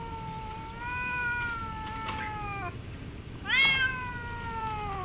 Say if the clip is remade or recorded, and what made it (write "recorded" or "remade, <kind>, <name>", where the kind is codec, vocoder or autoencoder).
recorded